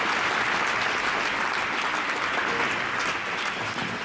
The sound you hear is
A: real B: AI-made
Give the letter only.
A